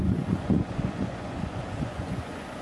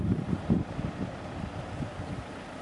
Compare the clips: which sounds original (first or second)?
second